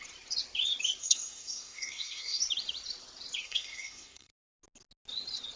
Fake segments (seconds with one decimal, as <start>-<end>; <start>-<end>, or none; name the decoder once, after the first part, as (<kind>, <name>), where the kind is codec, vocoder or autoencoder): 1.0-2.4 (codec, SNAC); 3.4-4.3